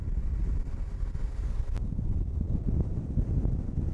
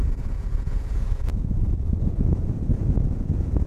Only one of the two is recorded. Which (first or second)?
first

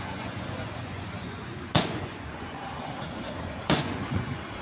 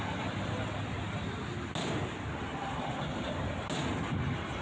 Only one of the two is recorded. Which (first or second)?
second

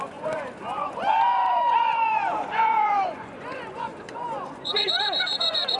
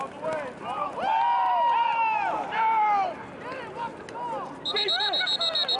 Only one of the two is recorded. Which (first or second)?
second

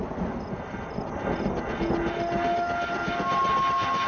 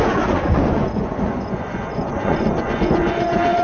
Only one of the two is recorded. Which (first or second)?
first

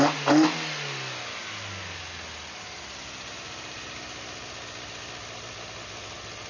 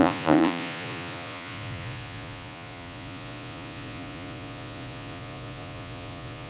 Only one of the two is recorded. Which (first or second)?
first